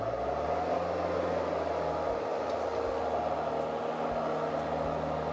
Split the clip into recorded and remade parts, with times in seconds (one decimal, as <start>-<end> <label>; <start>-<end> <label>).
0.0-5.3 recorded